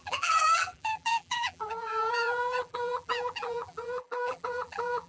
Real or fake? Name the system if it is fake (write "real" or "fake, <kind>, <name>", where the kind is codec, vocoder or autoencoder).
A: fake, vocoder, BigVGAN v2